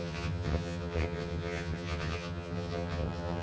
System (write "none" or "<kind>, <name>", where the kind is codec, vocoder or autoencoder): vocoder, HiFi-GAN